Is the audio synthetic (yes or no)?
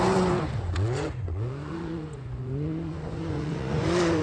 yes